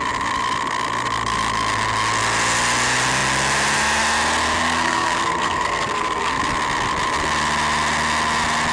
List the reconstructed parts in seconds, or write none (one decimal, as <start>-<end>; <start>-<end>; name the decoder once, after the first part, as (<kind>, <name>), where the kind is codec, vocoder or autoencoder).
4.6-6.4 (codec, SNAC)